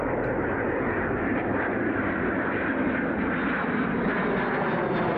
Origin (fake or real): real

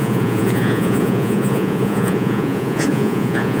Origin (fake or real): fake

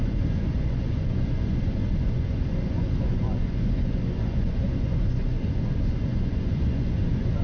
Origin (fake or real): fake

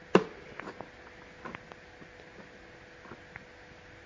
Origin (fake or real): real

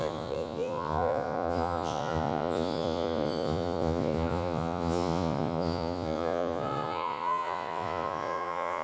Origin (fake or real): fake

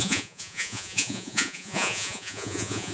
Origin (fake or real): fake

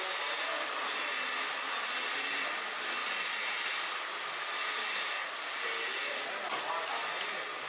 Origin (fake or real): real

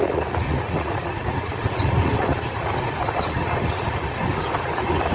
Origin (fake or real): fake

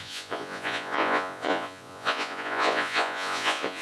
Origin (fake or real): fake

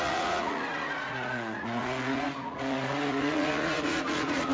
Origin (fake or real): fake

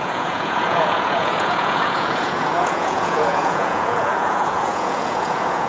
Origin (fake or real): fake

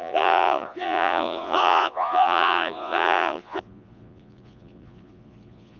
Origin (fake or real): fake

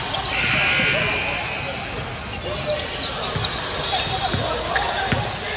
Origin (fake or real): real